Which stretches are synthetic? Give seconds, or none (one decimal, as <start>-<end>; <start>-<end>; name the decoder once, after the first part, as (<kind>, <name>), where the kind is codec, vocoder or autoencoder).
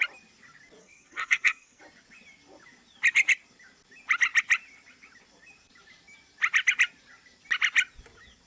0.8-1.8 (codec, SNAC)